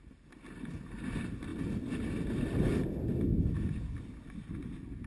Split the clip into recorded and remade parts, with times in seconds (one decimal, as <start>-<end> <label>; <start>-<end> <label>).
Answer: 0.0-5.1 recorded